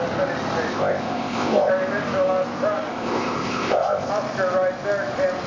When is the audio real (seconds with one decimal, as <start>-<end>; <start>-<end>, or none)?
0.0-0.7; 1.7-2.9; 4.1-5.5